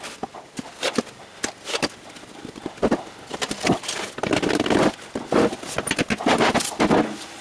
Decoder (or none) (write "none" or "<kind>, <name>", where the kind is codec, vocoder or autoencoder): none